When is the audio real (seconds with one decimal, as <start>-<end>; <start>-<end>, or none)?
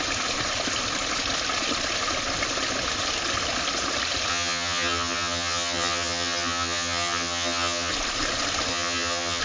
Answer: 0.0-4.3; 7.9-8.7